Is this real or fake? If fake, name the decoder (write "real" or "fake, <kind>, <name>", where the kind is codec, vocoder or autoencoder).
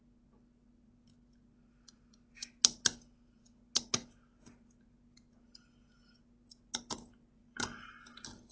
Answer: real